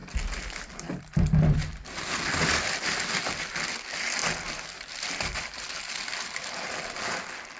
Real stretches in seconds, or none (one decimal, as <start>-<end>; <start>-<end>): 1.0-4.2; 6.5-7.6